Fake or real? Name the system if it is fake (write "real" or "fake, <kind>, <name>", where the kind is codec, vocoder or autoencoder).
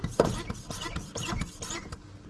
real